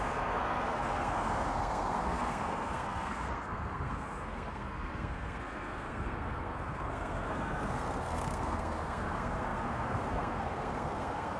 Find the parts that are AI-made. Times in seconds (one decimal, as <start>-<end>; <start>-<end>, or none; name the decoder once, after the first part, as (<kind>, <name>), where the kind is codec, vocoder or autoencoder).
0.0-11.4 (codec, SNAC)